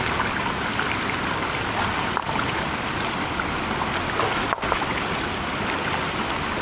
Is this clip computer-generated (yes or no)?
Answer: no